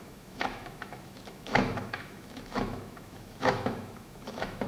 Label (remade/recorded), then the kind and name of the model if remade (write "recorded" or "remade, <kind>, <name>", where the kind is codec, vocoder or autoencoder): remade, autoencoder, DAC-VAE